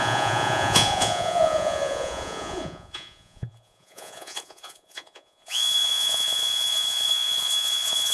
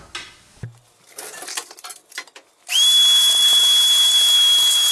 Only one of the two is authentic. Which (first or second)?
second